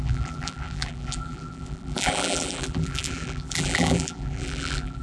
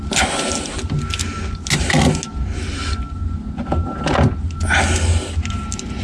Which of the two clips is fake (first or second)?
first